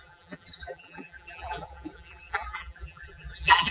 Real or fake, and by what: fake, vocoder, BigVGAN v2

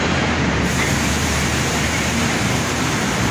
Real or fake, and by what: fake, vocoder, BigVGAN v2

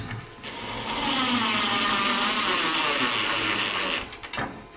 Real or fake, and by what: real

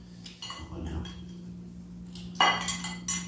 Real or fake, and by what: real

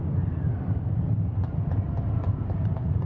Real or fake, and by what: fake, vocoder, BigVGAN v2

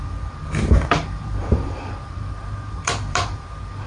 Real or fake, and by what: fake, vocoder, BigVGAN v2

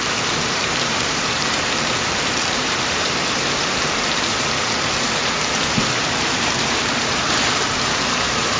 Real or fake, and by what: fake, vocoder, BigVGAN v2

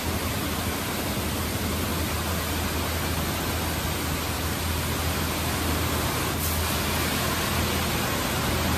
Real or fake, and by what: real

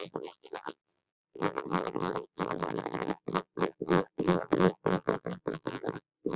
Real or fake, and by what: fake, vocoder, BigVGAN v2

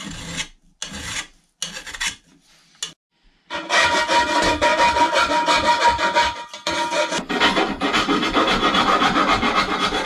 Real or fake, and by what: real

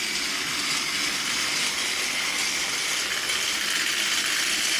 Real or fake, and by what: real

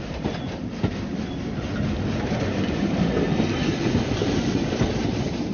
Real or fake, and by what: fake, vocoder, BigVGAN v2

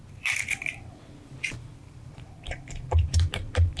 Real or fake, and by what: fake, vocoder, BigVGAN v2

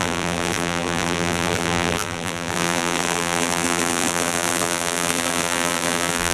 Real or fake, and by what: fake, vocoder, BigVGAN v2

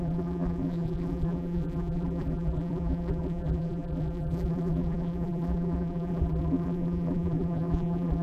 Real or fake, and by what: fake, vocoder, BigVGAN v2